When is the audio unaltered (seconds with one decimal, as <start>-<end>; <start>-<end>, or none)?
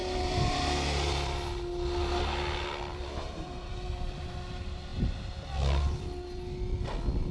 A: 1.1-2.9; 3.7-7.3